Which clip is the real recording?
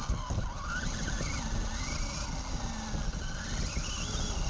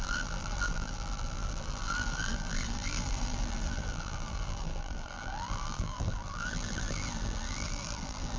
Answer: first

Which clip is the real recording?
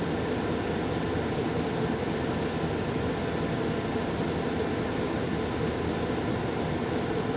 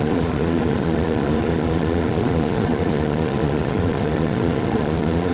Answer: first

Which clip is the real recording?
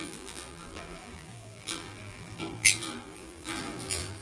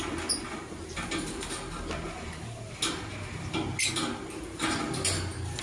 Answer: second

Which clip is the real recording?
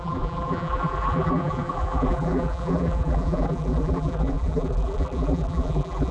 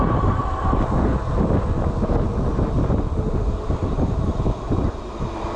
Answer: second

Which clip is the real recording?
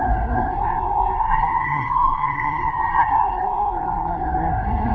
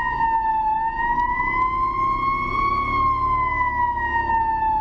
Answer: second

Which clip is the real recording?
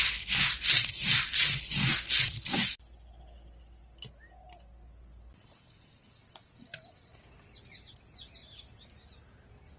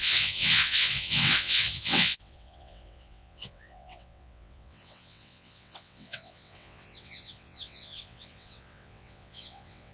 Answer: first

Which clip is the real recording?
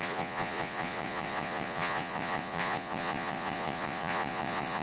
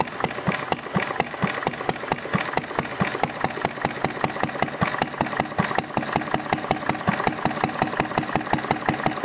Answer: second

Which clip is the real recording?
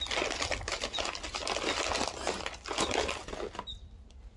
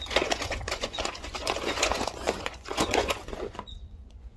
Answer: first